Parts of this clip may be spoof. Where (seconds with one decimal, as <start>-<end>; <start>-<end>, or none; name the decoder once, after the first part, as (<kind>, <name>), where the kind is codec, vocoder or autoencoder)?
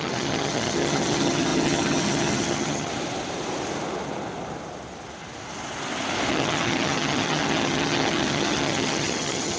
0.0-2.9 (vocoder, HiFi-GAN); 6.3-9.6